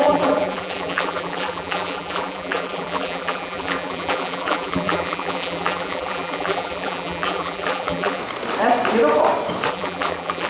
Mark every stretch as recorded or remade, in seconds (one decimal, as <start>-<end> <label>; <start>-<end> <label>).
0.0-8.2 remade; 8.2-9.7 recorded; 9.7-10.5 remade